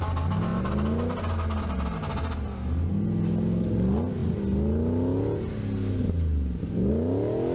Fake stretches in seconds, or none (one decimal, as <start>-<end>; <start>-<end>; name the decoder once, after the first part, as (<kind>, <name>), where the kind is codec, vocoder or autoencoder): none